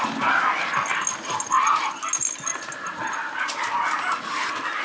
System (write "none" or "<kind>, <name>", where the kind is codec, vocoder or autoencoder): none